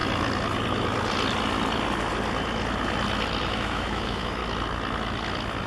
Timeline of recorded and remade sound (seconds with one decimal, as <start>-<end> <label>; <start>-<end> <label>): 0.0-3.4 recorded; 3.4-4.4 remade; 4.4-5.7 recorded